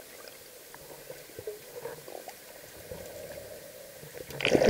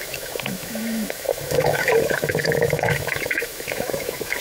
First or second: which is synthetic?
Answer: second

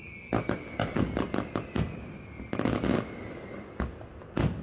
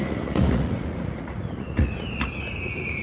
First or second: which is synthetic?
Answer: second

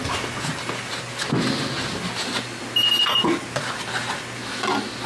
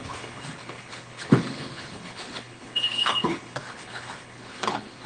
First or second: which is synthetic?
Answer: second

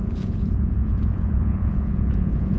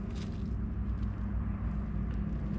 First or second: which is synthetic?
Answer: first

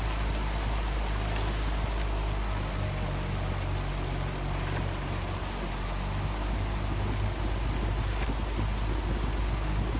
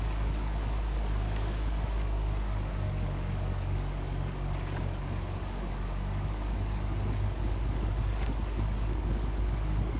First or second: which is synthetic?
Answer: second